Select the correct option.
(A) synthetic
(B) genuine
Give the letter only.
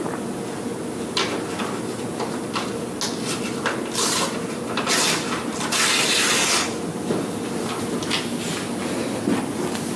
B